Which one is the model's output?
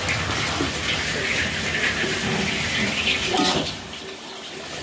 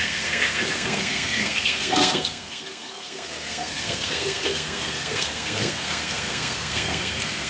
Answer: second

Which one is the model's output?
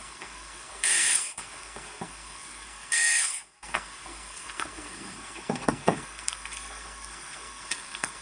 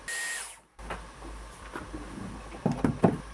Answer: first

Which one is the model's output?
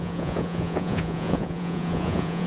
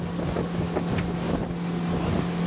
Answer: first